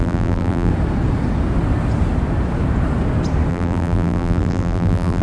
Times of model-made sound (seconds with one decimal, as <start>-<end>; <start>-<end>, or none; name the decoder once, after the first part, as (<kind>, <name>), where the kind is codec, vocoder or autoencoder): 0.0-0.7 (vocoder, BigVGAN v2); 3.5-5.2